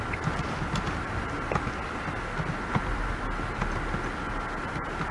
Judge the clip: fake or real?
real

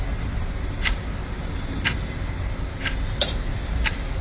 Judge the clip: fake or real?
fake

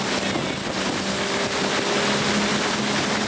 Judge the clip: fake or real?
real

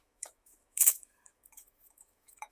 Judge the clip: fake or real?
fake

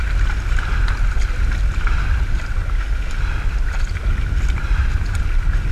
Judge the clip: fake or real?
real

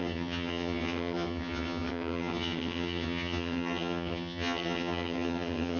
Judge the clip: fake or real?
fake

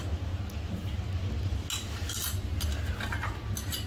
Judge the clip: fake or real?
real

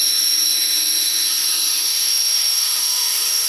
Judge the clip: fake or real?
fake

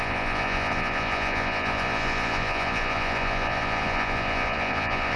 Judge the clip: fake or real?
fake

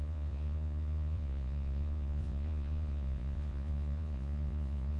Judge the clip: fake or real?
fake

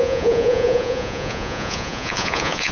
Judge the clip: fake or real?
fake